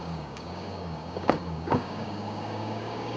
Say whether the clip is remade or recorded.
remade